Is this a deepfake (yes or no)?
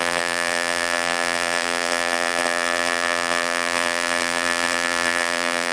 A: yes